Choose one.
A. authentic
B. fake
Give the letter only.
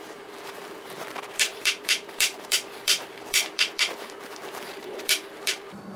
B